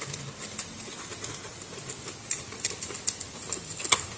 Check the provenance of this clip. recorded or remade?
recorded